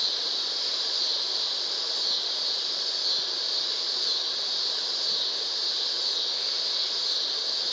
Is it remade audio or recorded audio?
recorded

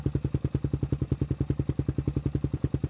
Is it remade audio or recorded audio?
recorded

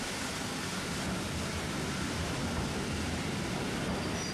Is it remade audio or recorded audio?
recorded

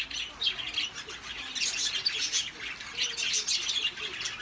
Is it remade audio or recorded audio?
recorded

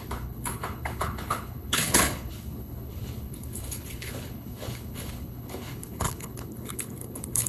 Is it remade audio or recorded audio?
remade